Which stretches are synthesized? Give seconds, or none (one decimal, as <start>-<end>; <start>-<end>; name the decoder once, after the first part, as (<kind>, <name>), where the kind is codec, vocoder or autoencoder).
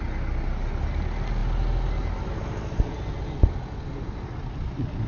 none